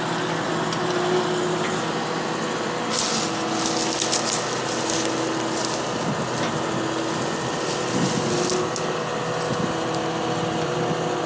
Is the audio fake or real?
real